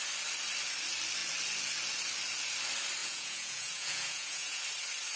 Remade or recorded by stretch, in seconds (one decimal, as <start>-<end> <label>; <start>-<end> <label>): 0.0-3.0 recorded; 3.0-4.6 remade; 4.6-5.2 recorded